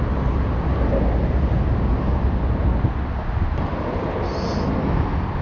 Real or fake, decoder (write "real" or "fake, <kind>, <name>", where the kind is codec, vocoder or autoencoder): real